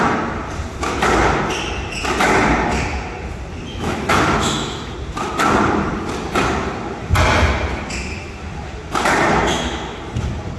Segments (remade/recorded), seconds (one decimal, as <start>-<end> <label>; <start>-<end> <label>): 0.0-3.7 recorded; 3.7-4.9 remade; 4.9-9.5 recorded; 9.5-10.0 remade; 10.0-10.6 recorded